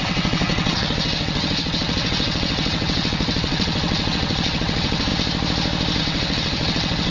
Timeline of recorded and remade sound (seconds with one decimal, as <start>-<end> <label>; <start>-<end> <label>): 0.0-5.1 remade; 5.1-6.0 recorded; 6.0-7.1 remade